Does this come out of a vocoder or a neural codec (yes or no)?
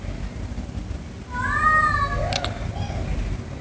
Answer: no